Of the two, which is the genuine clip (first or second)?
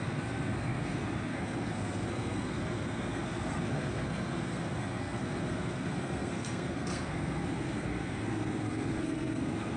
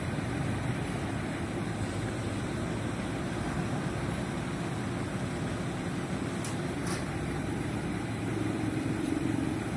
second